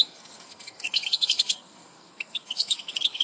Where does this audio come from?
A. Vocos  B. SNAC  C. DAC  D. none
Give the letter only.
B